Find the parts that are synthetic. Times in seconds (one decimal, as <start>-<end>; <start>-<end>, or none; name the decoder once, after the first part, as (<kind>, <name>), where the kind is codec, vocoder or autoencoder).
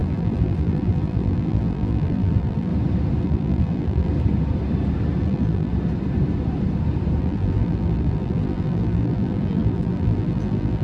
0.0-2.7 (vocoder, BigVGAN v2); 3.2-4.1; 5.2-5.7; 7.2-10.8